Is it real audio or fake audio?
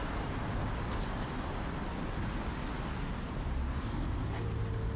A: real